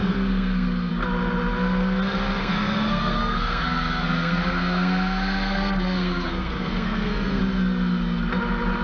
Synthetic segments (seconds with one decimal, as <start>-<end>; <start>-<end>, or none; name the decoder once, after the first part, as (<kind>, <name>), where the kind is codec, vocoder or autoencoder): 0.0-0.9 (codec, SNAC); 2.4-7.4